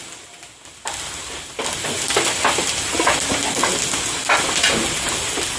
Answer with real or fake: real